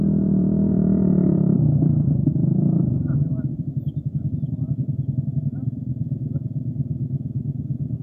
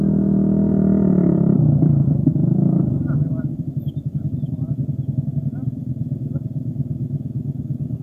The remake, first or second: first